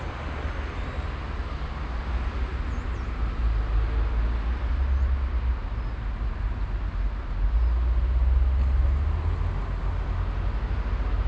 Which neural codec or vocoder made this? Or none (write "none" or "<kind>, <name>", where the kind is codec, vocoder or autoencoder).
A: none